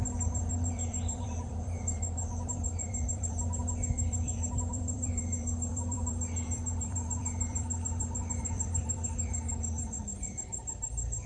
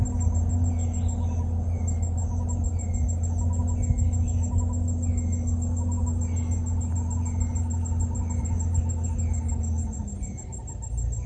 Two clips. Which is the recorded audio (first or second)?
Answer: second